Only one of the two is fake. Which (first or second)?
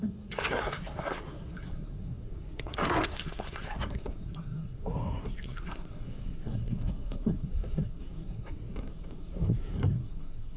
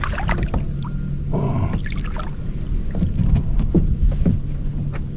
first